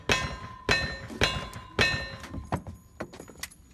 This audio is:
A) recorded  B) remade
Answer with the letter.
A